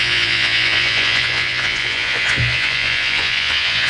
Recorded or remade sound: remade